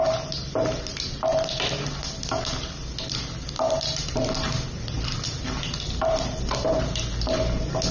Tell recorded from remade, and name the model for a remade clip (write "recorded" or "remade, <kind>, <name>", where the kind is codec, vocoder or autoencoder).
recorded